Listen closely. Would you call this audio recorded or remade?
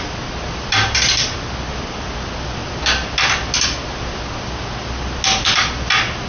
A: recorded